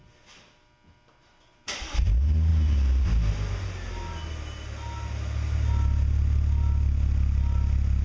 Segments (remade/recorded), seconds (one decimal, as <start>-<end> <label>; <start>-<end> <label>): 0.0-8.0 recorded